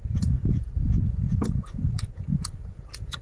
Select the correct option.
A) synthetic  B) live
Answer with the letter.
A